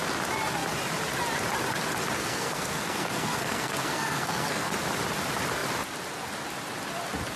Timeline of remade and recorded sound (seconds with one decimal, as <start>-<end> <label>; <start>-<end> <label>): 0.0-2.2 recorded; 2.2-4.7 remade; 4.7-7.4 recorded